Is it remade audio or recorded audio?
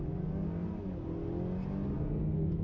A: recorded